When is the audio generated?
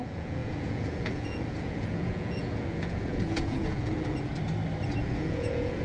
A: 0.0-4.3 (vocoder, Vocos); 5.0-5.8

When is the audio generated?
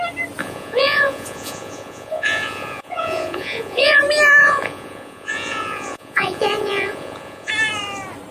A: 0.4-4.0 (vocoder, Vocos); 4.4-7.5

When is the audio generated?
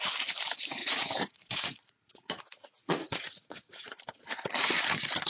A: 0.8-4.0 (vocoder, Vocos)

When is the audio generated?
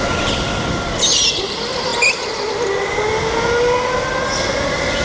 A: none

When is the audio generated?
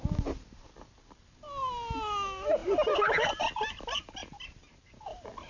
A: none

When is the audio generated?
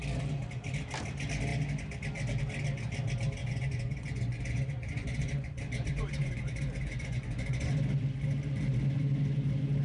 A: 3.4-7.7 (vocoder, Vocos)